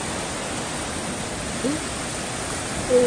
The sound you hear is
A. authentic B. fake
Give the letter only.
A